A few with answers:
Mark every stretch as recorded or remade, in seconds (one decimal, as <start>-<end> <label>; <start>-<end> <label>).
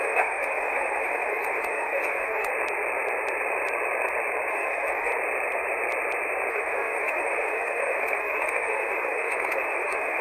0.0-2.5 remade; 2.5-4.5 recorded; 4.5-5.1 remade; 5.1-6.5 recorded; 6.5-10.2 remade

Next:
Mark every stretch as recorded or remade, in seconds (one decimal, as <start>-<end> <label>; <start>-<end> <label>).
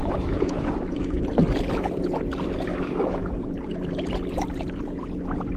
0.0-1.2 remade; 1.2-2.7 recorded; 2.7-3.5 remade; 3.5-5.6 recorded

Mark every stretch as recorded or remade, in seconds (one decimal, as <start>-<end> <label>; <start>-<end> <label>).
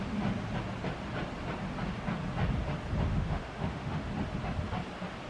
0.0-3.1 recorded; 3.1-4.0 remade; 4.0-5.3 recorded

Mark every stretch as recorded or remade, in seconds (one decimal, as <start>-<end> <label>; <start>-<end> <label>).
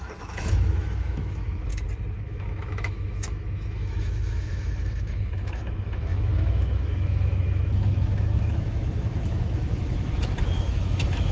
0.0-1.7 remade; 1.7-2.2 recorded; 2.2-11.3 remade